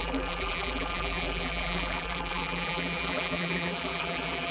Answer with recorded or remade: remade